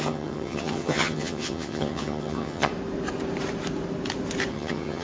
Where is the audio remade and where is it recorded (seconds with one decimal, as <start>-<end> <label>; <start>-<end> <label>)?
0.0-2.7 remade; 2.7-4.5 recorded; 4.5-5.0 remade